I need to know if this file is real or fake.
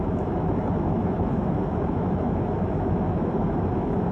fake